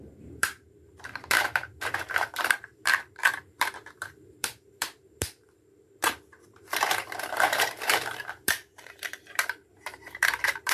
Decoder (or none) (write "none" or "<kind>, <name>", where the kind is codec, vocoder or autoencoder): vocoder, BigVGAN v2